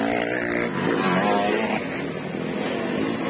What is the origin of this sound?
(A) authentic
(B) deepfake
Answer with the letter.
A